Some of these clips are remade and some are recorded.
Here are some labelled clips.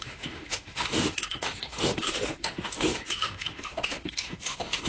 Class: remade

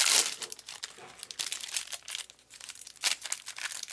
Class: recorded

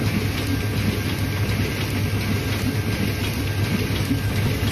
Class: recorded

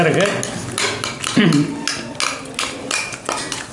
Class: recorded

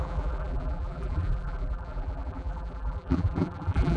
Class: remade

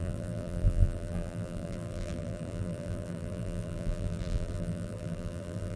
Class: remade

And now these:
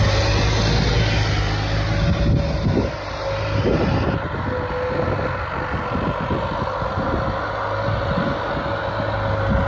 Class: recorded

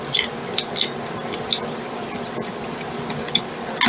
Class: recorded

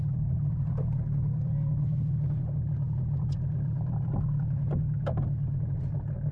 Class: recorded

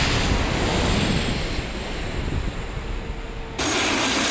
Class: recorded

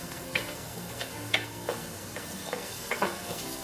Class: remade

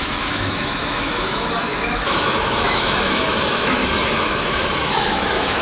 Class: remade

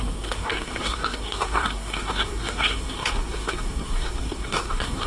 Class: remade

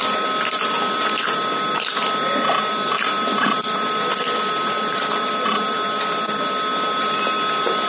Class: recorded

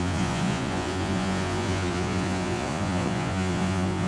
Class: remade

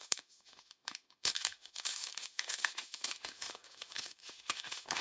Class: remade